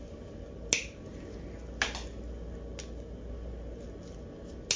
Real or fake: real